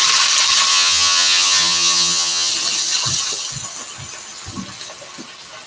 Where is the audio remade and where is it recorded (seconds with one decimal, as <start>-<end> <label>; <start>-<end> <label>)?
0.0-0.7 recorded; 0.7-2.5 remade; 2.5-5.7 recorded